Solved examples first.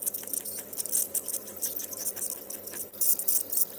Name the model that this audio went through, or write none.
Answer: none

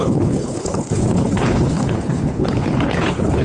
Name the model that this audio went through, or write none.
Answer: codec, HILCodec